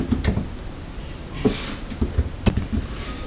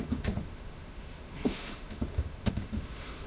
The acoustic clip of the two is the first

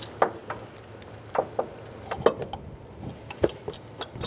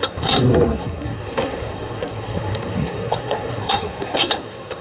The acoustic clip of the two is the first